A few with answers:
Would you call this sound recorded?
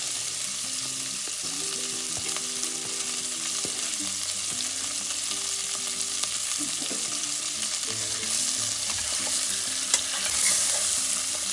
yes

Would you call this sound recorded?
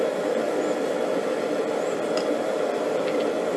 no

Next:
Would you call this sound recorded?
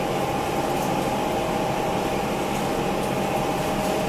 yes